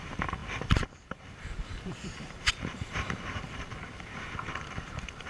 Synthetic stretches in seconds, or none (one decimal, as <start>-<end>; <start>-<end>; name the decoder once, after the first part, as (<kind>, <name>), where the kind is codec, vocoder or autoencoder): 0.0-5.3 (vocoder, BigVGAN v2)